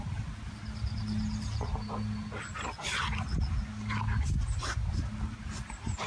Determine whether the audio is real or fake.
real